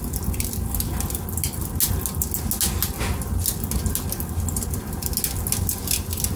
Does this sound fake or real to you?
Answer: real